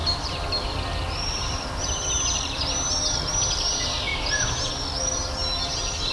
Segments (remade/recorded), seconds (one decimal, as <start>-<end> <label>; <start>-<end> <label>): 0.0-3.0 remade; 3.0-4.1 recorded; 4.1-4.7 remade; 4.7-6.1 recorded